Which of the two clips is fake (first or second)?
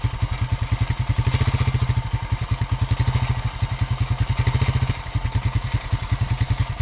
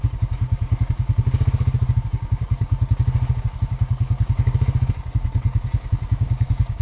second